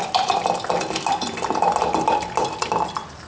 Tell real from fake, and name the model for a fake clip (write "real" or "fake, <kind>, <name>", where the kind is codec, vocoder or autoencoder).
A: real